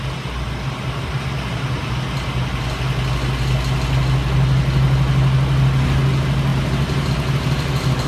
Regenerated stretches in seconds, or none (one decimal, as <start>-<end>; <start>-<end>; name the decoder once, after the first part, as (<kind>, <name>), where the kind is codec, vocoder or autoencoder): 6.5-7.1 (vocoder, BigVGAN v2)

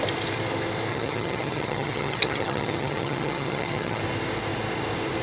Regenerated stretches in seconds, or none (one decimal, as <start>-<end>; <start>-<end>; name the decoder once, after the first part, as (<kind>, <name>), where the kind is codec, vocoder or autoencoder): 0.9-4.0 (vocoder, HiFi-GAN)

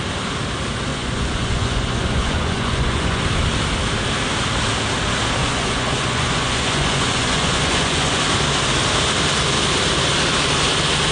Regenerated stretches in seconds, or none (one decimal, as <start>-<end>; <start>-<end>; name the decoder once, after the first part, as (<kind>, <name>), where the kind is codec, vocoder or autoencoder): 0.9-3.2 (vocoder, Vocos); 5.4-8.2

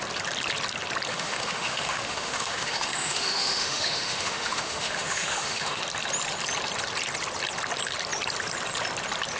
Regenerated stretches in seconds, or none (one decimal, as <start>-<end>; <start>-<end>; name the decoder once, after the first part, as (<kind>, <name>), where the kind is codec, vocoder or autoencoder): 1.1-5.8 (autoencoder, DAC-VAE)

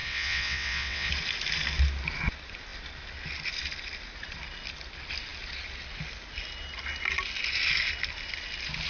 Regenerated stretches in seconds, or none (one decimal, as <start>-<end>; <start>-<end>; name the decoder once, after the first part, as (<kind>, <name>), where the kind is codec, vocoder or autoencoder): 0.0-1.1 (vocoder, WaveNeXt)

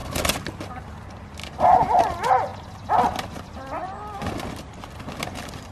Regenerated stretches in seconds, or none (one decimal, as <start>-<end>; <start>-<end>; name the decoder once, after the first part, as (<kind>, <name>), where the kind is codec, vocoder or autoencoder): none